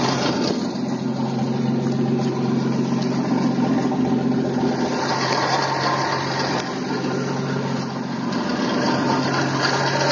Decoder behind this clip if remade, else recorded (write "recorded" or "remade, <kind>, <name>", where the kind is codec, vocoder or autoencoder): recorded